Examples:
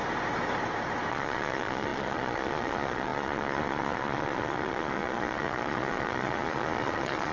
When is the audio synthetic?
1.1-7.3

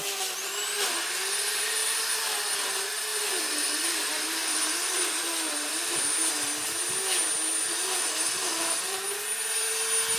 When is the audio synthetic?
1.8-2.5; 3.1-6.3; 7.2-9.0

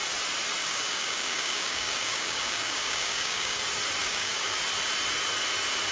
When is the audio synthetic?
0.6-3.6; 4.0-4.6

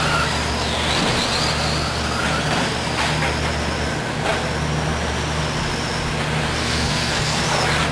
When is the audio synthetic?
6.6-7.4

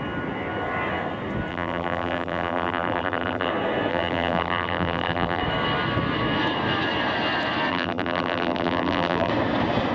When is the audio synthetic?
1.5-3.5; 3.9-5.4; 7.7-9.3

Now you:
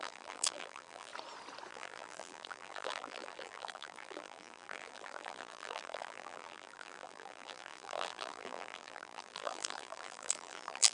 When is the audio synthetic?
0.0-1.1; 1.7-10.9

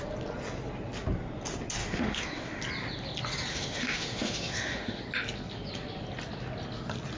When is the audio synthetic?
1.8-2.6; 3.5-5.0